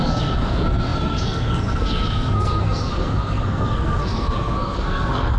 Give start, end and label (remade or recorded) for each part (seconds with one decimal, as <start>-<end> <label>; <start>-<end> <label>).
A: 0.0-5.4 remade